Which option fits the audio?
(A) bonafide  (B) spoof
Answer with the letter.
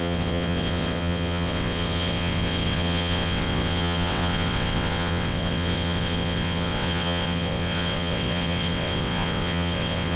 B